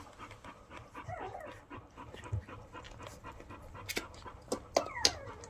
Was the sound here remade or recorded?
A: recorded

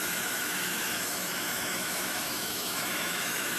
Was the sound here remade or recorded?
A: remade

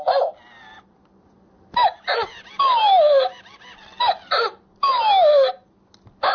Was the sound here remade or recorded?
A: recorded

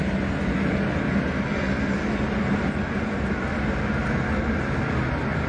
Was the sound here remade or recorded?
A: recorded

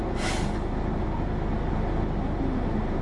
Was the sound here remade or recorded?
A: recorded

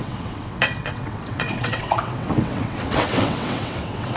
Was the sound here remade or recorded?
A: remade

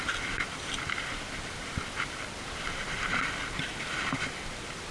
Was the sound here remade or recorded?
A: remade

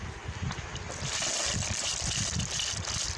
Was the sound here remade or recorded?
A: recorded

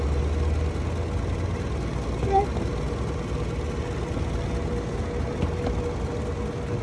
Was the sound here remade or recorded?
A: recorded